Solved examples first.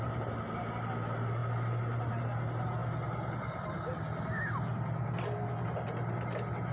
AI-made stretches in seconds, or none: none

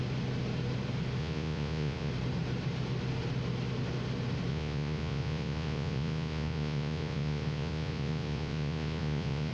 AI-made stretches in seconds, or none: 1.2-2.1 (vocoder, Vocos); 4.5-9.5

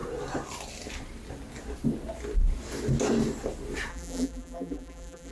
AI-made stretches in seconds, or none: 3.9-5.3 (vocoder, BigVGAN v2)

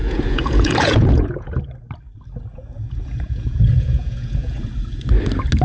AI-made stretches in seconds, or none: 0.0-1.6 (vocoder, Vocos); 2.5-4.6

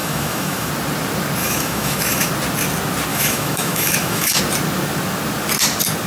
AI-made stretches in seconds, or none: 0.0-0.7 (autoencoder, DAC-VAE); 1.4-2.3; 3.1-4.4